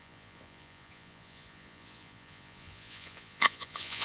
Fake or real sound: fake